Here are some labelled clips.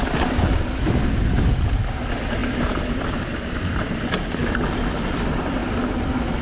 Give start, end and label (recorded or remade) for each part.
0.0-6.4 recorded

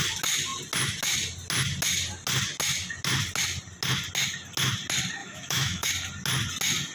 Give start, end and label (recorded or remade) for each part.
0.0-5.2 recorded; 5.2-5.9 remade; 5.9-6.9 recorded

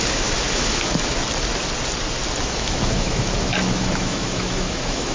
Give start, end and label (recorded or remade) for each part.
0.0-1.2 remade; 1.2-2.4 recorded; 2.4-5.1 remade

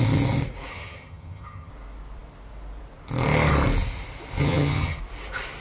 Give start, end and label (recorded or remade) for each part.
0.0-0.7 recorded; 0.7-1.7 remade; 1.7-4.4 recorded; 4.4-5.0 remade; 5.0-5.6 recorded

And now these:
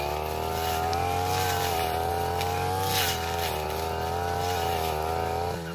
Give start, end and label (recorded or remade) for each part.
0.0-0.9 recorded; 0.9-2.1 remade; 2.1-5.7 recorded

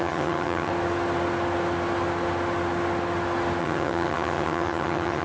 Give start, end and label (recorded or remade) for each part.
0.0-0.7 remade; 0.7-3.6 recorded; 3.6-5.2 remade